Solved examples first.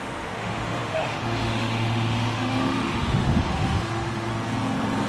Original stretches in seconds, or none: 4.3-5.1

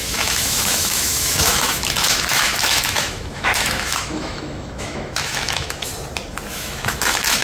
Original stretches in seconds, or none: 5.9-6.5

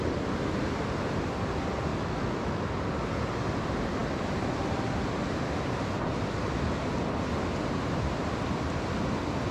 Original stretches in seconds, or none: 0.0-1.9; 2.6-9.5

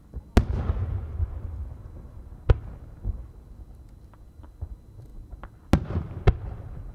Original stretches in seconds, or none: 0.0-6.9

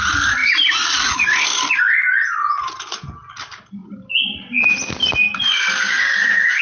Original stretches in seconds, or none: 0.0-6.6